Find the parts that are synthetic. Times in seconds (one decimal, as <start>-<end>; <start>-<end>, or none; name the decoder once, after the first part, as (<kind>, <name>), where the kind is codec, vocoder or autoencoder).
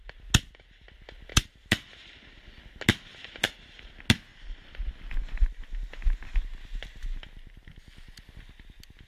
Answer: 1.3-2.6 (vocoder, BigVGAN v2); 3.1-3.9; 4.3-4.9